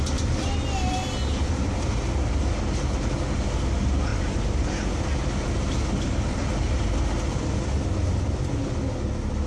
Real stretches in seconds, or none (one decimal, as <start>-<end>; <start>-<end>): 0.0-4.1; 4.9-9.5